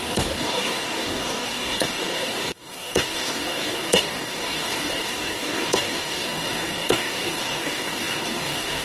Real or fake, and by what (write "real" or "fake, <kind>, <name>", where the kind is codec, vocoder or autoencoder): fake, codec, DAC